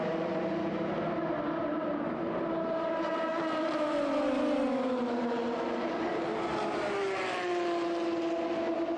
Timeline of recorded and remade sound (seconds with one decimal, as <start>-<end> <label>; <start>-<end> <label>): 0.0-1.6 recorded; 1.6-3.3 remade; 3.3-9.0 recorded